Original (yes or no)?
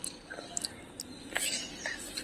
yes